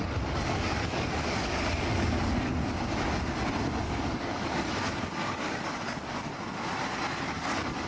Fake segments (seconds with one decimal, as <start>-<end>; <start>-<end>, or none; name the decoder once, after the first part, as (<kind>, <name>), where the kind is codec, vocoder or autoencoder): 0.0-2.5 (codec, DAC); 3.8-6.3; 7.2-7.9